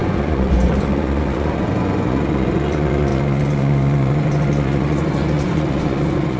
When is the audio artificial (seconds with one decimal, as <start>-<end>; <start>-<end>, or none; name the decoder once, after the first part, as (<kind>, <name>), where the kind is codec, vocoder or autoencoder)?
0.0-6.4 (vocoder, Vocos)